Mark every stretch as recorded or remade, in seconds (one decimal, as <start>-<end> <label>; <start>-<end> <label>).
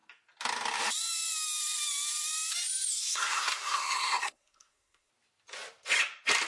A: 0.0-2.9 recorded; 2.9-5.1 remade; 5.1-6.5 recorded